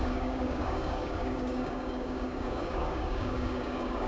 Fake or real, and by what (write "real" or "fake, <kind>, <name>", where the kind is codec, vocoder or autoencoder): fake, codec, DAC